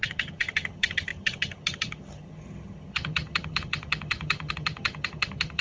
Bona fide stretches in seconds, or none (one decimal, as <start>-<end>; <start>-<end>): none